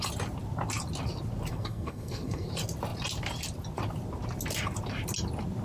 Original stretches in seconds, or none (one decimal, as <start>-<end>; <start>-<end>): 0.0-1.5; 2.5-5.6

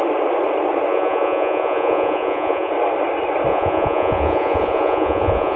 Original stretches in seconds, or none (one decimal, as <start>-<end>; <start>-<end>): 0.0-0.9; 2.7-3.5

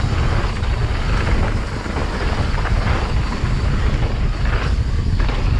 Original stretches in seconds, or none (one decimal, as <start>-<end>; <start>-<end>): 0.0-5.6

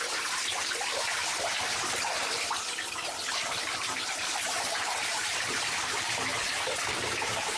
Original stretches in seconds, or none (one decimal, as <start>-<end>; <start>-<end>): 1.2-3.4; 6.3-6.9

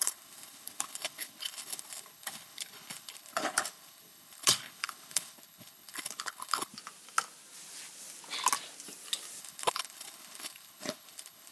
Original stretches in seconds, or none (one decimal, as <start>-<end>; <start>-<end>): 6.7-9.4

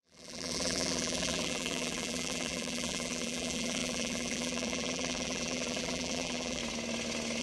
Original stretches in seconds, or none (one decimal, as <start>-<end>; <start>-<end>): 6.6-7.4